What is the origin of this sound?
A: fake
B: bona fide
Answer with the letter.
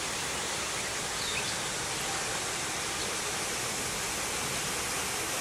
B